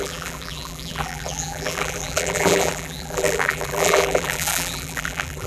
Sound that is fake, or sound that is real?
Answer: fake